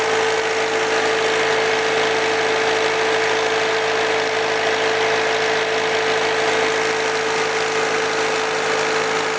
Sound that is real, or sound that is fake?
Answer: real